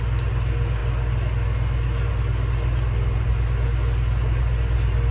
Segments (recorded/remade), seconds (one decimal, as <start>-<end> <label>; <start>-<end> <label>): 0.0-5.1 recorded